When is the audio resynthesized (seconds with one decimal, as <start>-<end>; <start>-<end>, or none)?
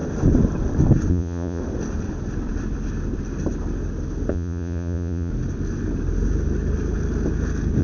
1.1-1.6; 4.3-5.3